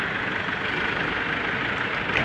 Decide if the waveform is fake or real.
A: real